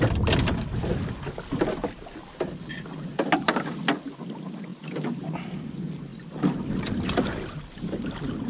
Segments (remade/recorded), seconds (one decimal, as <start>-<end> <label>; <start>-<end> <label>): 0.0-4.7 recorded; 4.7-5.5 remade; 5.5-8.5 recorded